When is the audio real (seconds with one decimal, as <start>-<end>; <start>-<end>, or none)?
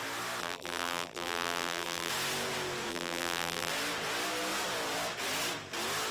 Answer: 0.0-0.4; 2.1-2.9; 3.7-6.1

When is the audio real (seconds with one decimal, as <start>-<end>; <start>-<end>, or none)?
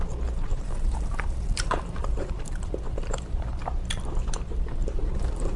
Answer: 0.0-0.5; 3.5-4.8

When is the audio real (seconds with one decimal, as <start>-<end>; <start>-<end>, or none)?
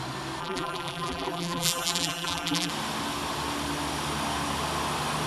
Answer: 0.0-0.4; 2.7-5.3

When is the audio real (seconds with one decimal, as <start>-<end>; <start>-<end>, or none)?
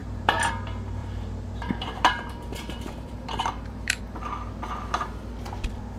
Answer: 0.5-1.0; 4.0-6.0